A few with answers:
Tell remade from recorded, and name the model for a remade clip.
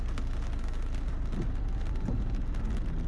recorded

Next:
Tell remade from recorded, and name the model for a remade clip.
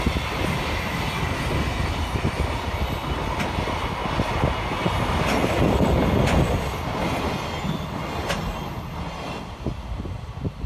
recorded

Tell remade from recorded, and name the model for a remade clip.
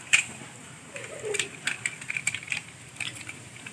remade, vocoder, BigVGAN v2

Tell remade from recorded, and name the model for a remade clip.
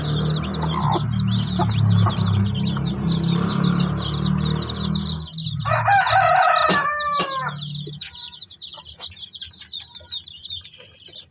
recorded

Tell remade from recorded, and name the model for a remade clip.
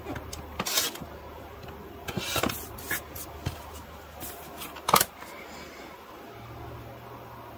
recorded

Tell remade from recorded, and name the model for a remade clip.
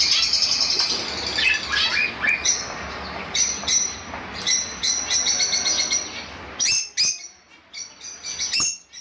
recorded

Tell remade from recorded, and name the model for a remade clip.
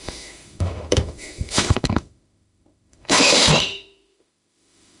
remade, autoencoder, DAC-VAE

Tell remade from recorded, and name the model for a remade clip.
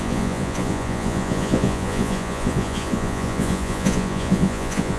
remade, vocoder, Vocos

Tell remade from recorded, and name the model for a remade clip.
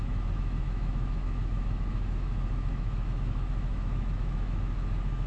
remade, autoencoder, DAC-VAE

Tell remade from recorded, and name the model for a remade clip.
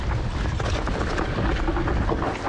recorded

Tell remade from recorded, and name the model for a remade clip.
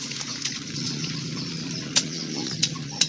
remade, vocoder, Vocos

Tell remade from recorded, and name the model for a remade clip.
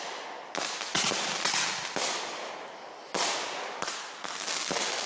recorded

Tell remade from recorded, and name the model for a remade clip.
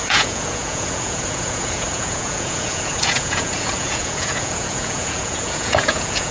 remade, vocoder, Vocos